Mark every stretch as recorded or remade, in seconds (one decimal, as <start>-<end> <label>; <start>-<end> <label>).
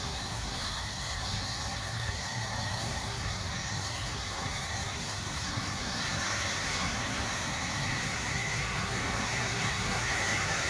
0.0-10.7 remade